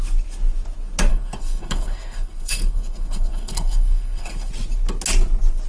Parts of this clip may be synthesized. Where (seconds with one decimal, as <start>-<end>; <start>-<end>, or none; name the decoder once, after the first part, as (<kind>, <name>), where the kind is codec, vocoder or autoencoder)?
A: 1.1-4.5 (codec, SNAC)